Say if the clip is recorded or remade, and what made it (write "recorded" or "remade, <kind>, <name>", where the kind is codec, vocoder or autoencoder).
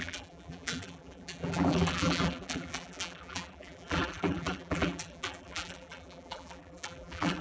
remade, vocoder, BigVGAN v2